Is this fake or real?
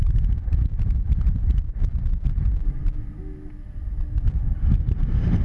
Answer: real